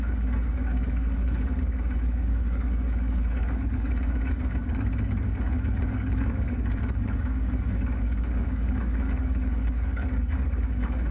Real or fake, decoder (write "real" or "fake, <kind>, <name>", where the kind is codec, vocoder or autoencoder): fake, codec, DAC